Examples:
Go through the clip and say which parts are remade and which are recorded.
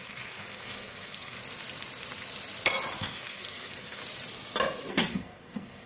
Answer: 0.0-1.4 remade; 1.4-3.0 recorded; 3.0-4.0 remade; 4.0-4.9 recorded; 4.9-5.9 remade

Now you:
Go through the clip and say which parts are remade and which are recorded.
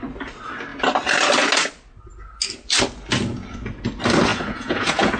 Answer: 0.0-4.3 recorded; 4.3-5.2 remade